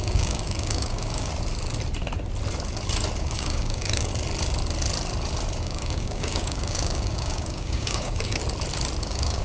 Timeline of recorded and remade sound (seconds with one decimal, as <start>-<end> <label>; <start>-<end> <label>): 0.0-1.3 remade; 1.3-3.2 recorded; 3.2-4.1 remade; 4.1-5.6 recorded; 5.6-8.4 remade; 8.4-9.0 recorded; 9.0-9.4 remade